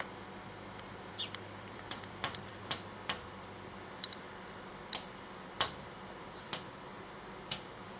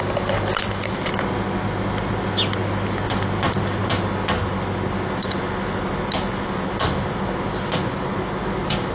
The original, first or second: second